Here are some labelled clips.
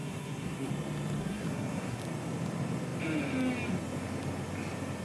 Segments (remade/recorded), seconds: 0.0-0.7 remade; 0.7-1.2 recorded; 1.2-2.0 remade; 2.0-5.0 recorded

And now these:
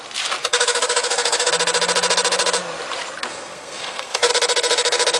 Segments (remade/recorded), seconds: 0.0-0.4 recorded; 0.4-1.5 remade; 1.5-3.3 recorded; 3.3-4.3 remade; 4.3-5.2 recorded

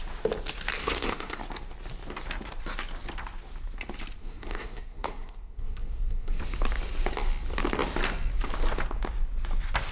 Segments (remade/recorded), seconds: 0.0-0.8 recorded; 0.8-1.4 remade; 1.4-4.2 recorded; 4.2-6.4 remade; 6.4-9.9 recorded

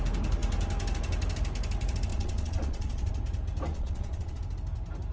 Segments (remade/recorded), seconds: 0.0-2.1 recorded; 2.1-3.1 remade; 3.1-3.7 recorded; 3.7-4.4 remade; 4.4-5.1 recorded